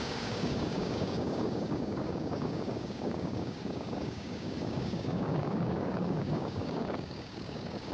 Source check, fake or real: fake